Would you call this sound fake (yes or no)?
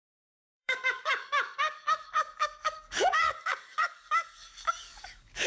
yes